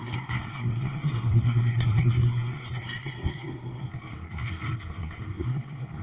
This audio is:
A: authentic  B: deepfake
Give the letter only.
B